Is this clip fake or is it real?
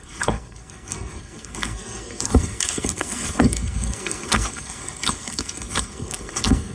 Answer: fake